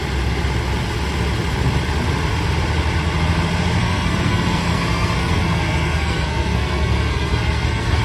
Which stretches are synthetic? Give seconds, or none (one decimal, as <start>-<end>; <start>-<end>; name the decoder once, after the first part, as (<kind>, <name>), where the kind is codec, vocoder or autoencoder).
3.8-8.0 (codec, SNAC)